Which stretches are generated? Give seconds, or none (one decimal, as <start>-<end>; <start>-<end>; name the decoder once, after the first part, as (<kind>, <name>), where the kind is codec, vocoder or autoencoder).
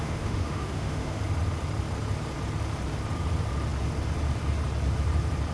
0.0-1.2 (autoencoder, DAC-VAE)